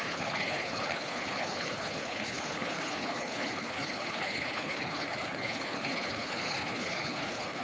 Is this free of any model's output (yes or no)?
no